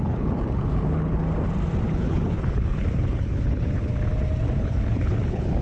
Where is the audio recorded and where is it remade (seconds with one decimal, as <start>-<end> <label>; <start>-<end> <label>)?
0.0-1.2 remade; 1.2-1.9 recorded; 1.9-3.9 remade; 3.9-4.6 recorded; 4.6-5.6 remade